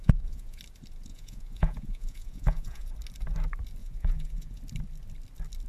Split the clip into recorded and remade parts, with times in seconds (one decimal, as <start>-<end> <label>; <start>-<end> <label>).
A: 0.0-0.6 remade; 0.6-1.1 recorded; 1.1-2.9 remade; 2.9-3.8 recorded; 3.8-4.6 remade; 4.6-5.7 recorded